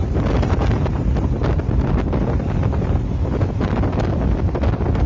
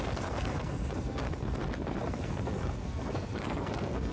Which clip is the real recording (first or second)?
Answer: first